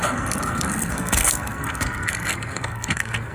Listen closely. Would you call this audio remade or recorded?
remade